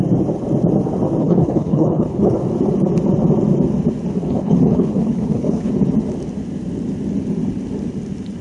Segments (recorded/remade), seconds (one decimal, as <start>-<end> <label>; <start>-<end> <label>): 0.0-1.2 recorded; 1.2-2.4 remade; 2.4-4.1 recorded; 4.1-5.7 remade; 5.7-8.4 recorded